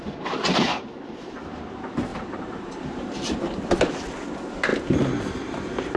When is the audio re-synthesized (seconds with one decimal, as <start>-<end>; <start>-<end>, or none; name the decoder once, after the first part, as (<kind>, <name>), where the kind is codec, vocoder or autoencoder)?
2.1-3.9 (vocoder, BigVGAN v2)